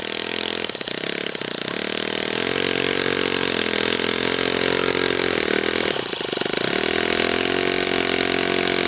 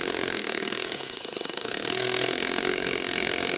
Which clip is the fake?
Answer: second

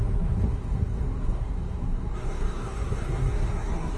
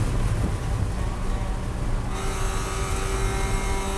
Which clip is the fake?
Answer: first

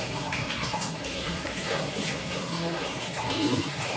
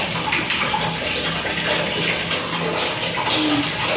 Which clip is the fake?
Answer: first